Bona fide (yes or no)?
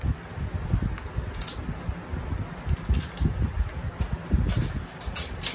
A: yes